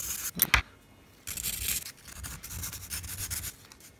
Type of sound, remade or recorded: recorded